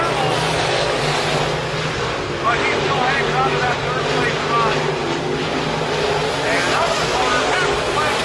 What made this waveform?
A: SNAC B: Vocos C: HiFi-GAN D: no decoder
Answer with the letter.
D